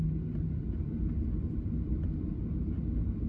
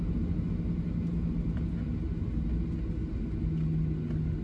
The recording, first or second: second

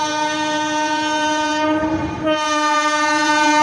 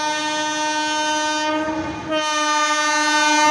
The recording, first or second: second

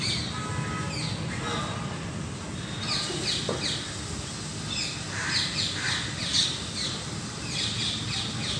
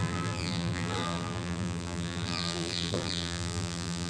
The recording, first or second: first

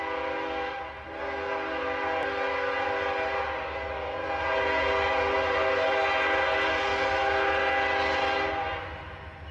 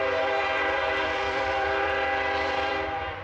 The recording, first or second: first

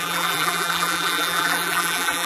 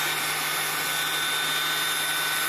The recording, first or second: second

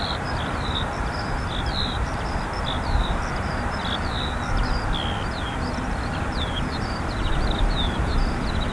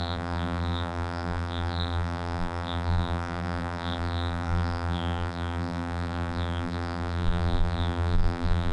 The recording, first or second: first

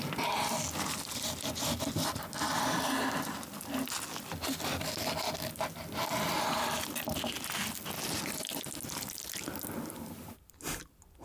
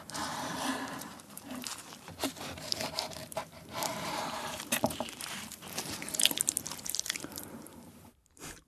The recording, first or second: first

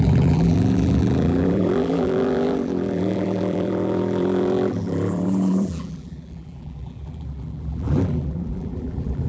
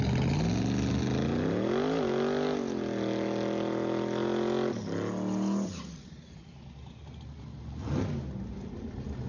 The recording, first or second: second